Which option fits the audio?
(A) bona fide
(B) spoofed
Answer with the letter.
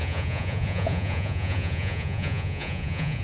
B